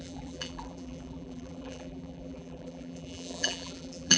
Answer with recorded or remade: remade